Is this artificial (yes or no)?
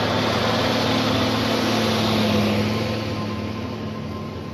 no